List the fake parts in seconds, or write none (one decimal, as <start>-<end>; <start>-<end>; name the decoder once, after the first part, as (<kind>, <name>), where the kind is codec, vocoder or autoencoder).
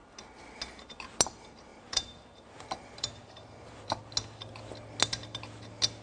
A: 1.7-4.0 (vocoder, BigVGAN v2)